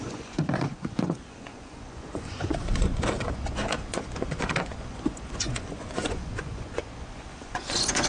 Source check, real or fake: fake